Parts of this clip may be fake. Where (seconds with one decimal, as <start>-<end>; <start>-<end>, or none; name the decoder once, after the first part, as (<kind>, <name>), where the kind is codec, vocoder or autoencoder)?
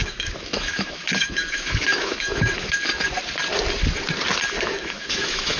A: 0.0-2.9 (autoencoder, DAC-VAE); 4.6-5.6